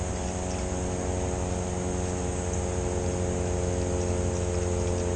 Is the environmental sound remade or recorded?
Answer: recorded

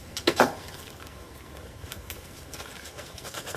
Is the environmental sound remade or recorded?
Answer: remade